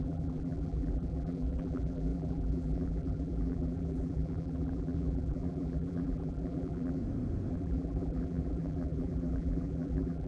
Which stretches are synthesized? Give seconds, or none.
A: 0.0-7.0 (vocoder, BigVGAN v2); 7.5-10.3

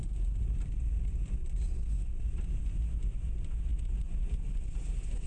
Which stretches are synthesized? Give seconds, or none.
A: none

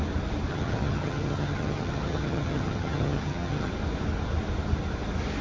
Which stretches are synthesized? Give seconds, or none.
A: 0.5-3.7 (vocoder, HiFi-GAN)

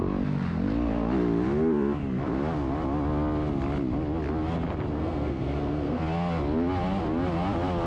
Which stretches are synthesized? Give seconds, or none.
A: 4.9-6.0 (codec, SNAC)